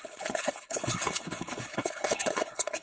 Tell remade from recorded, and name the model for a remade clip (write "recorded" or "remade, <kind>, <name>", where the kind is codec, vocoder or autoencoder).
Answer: remade, codec, HILCodec